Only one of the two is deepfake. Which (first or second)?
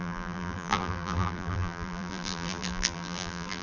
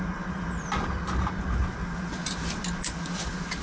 first